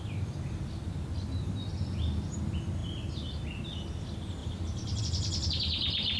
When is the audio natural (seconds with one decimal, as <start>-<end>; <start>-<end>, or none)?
0.0-4.4; 5.0-6.2